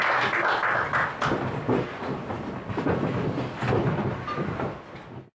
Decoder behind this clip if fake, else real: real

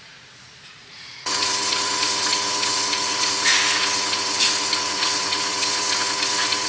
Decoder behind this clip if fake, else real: fake, vocoder, Vocos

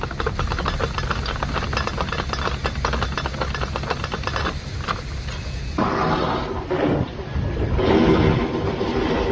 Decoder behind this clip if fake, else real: real